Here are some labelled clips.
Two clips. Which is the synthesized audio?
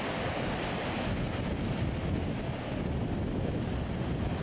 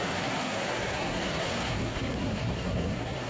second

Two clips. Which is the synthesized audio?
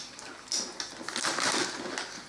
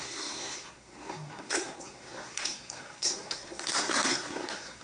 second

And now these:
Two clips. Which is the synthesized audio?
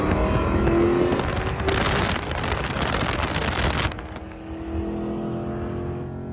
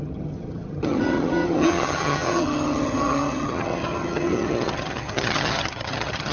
second